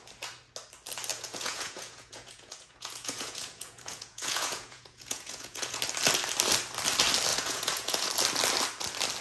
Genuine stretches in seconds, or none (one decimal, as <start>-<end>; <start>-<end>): 0.0-1.1; 5.8-7.3; 8.1-9.2